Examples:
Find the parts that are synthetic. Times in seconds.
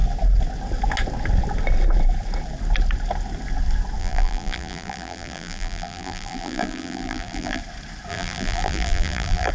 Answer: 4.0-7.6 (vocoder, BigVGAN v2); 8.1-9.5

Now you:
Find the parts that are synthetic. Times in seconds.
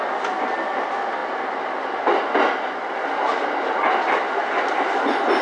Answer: none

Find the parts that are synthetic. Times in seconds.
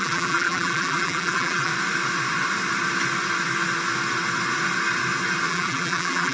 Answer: 0.0-1.7 (vocoder, BigVGAN v2); 5.5-6.3